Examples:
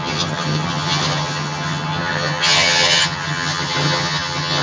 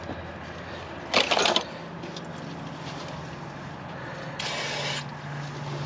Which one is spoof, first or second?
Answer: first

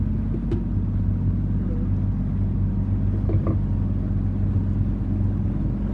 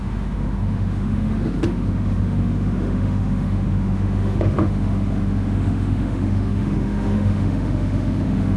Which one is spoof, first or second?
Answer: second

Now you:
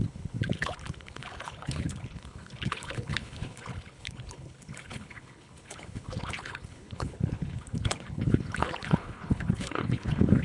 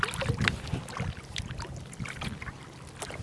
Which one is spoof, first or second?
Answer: first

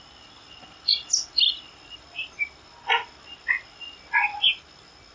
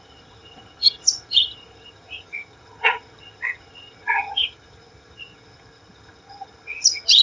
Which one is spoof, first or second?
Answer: second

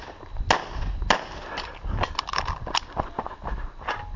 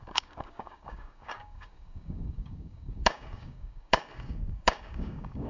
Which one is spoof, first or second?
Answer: second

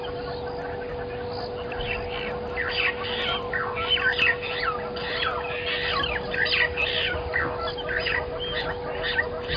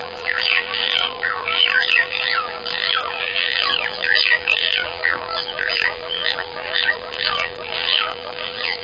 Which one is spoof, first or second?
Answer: second